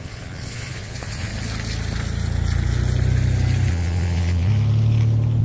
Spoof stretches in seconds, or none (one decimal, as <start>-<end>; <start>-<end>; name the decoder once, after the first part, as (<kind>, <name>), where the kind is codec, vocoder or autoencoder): 0.0-1.3 (vocoder, Vocos); 3.7-4.5